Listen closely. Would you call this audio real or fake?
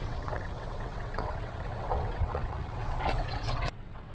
fake